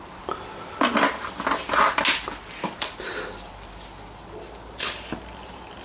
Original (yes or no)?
yes